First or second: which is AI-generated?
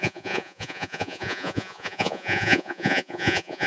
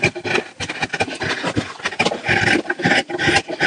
first